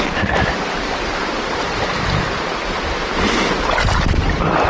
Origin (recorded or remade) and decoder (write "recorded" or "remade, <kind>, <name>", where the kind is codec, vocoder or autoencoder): remade, vocoder, BigVGAN v2